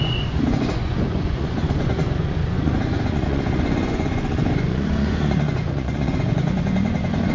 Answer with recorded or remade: remade